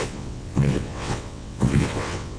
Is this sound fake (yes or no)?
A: yes